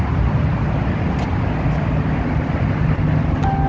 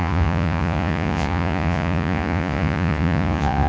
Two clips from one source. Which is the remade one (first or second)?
second